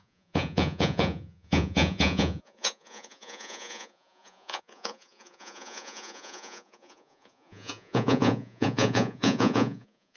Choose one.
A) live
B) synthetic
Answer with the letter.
B